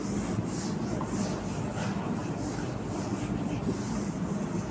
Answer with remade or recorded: recorded